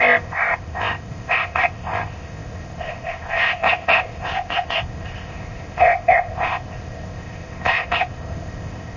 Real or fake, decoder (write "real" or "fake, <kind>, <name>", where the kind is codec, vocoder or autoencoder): fake, codec, ZipCodec